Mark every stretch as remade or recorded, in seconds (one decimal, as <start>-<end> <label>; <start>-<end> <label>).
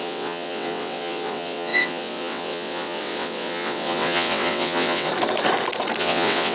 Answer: 0.0-5.1 remade; 5.1-6.0 recorded; 6.0-6.5 remade